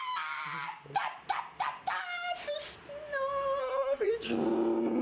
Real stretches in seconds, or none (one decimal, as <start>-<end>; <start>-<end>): 0.0-3.6; 4.1-5.0